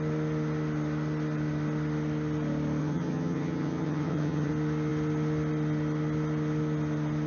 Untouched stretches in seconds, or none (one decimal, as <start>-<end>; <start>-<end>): 0.0-2.8; 4.5-7.3